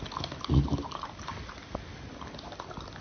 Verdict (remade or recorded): recorded